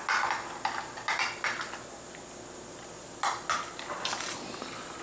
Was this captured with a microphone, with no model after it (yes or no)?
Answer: yes